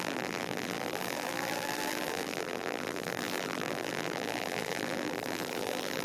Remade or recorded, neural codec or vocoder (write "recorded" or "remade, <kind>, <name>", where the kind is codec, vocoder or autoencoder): remade, vocoder, BigVGAN v2